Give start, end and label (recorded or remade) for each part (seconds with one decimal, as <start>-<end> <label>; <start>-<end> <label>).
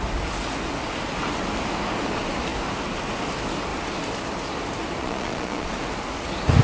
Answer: 0.0-5.0 recorded; 5.0-5.7 remade; 5.7-6.6 recorded